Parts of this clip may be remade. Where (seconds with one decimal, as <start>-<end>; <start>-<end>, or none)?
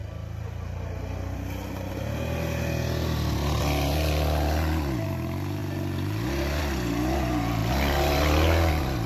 none